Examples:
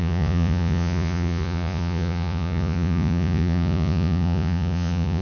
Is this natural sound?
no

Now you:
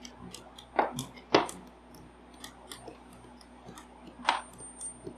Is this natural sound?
yes